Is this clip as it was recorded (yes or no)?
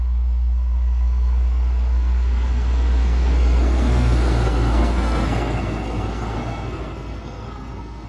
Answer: no